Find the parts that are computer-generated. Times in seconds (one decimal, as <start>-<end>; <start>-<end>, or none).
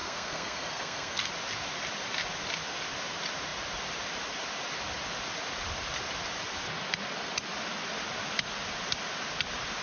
0.0-1.3